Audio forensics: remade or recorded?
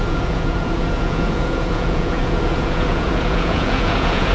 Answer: remade